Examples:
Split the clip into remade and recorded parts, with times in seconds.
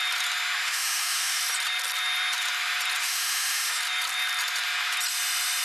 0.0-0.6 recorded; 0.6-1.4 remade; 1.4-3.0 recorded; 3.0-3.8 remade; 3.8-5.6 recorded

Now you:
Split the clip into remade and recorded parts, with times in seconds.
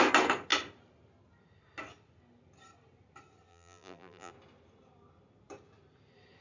0.0-3.5 recorded; 3.5-4.3 remade; 4.3-6.4 recorded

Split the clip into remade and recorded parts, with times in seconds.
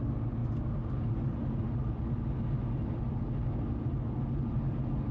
0.0-5.1 recorded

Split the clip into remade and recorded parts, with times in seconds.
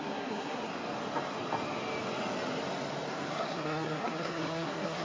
0.0-0.7 remade; 0.7-3.3 recorded; 3.3-5.0 remade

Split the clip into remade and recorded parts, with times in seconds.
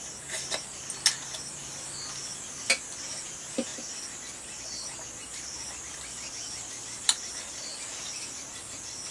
0.0-9.1 recorded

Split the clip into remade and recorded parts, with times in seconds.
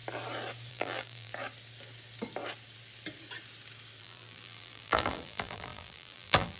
0.0-0.7 recorded; 0.7-1.3 remade; 1.3-4.0 recorded; 4.0-6.6 remade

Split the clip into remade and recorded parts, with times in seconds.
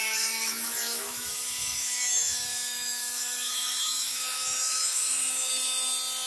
0.0-5.5 remade; 5.5-6.3 recorded